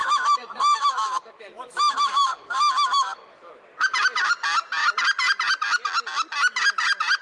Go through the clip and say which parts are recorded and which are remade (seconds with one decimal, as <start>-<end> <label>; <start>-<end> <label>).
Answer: 0.0-3.5 remade; 3.5-7.2 recorded